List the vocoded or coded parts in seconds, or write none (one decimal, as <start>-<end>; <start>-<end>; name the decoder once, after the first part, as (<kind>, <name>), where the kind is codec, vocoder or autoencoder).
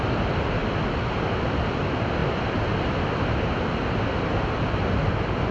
none